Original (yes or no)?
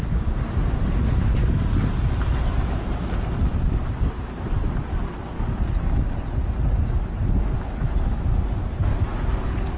yes